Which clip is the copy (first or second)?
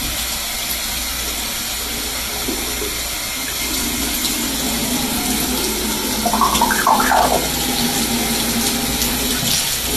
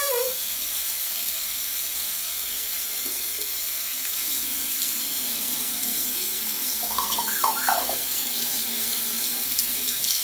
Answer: second